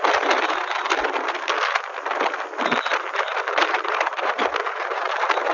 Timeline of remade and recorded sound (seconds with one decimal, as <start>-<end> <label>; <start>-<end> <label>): 0.0-2.9 recorded; 2.9-5.5 remade